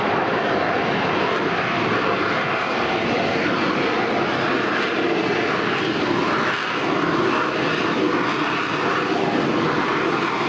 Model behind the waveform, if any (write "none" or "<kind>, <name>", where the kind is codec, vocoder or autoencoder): none